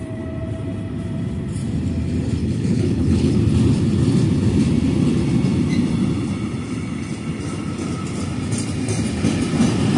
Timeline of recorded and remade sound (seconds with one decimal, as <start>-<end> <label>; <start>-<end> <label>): 0.0-2.4 recorded; 2.4-3.4 remade; 3.4-10.0 recorded